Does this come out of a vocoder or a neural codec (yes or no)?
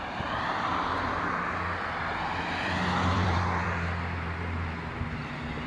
yes